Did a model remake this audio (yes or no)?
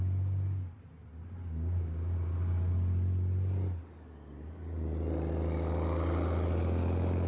no